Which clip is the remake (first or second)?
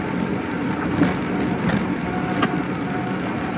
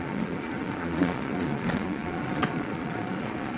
second